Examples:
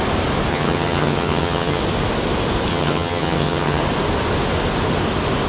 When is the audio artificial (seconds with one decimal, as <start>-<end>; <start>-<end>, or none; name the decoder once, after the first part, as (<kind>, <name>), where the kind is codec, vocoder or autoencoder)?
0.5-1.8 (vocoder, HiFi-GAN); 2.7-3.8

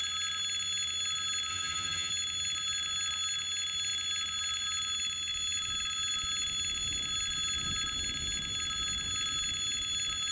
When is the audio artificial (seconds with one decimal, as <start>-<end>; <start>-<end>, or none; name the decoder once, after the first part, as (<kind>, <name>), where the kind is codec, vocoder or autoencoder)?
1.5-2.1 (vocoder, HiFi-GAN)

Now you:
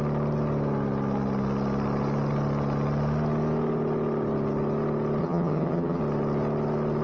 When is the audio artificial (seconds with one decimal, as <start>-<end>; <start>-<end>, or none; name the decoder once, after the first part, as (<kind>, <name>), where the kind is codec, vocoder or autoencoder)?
5.2-6.0 (vocoder, HiFi-GAN)

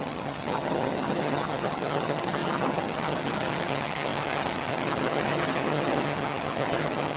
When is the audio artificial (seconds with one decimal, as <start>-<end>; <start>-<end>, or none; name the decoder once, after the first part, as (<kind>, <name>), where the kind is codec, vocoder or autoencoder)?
0.0-7.2 (vocoder, HiFi-GAN)

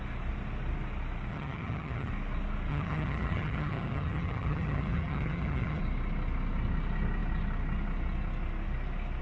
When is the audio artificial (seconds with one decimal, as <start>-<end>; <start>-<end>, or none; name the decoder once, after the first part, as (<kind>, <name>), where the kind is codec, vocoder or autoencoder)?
1.3-2.1 (vocoder, HiFi-GAN); 2.7-5.8

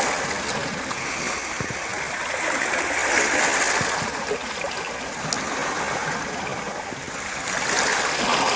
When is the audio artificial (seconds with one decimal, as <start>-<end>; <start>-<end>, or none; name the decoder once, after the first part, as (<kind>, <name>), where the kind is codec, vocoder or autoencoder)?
none

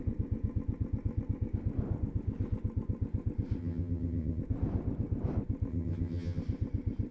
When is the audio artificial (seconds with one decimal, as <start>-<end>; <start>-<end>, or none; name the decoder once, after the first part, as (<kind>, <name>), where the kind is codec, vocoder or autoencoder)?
3.6-4.4 (vocoder, HiFi-GAN); 5.7-6.4